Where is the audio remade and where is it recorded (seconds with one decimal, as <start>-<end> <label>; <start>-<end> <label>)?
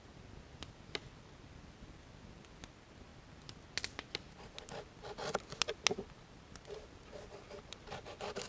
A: 0.0-8.5 recorded